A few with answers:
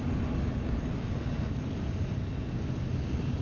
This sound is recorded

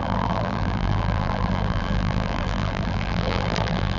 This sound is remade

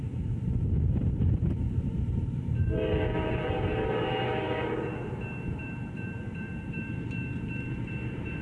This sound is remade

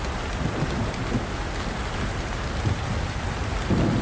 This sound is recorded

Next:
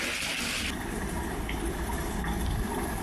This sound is recorded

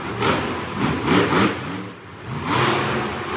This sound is recorded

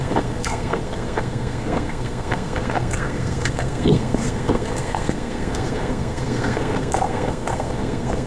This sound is remade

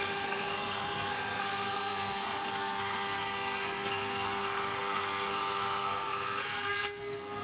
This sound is remade